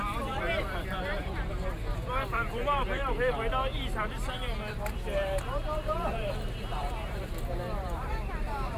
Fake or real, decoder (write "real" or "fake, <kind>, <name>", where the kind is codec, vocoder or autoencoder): fake, vocoder, BigVGAN v2